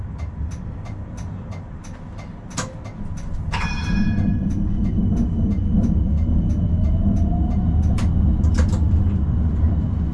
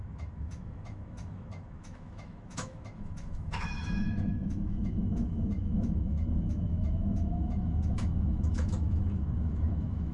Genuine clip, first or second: first